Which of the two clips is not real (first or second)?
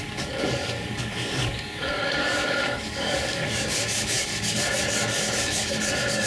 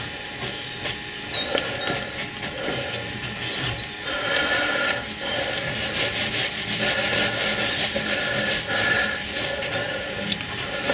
first